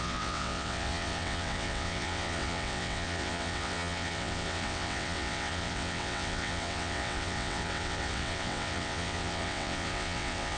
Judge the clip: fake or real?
fake